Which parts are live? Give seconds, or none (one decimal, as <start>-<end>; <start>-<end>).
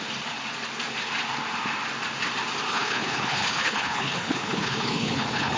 0.0-2.7